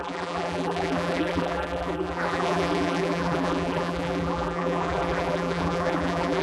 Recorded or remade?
remade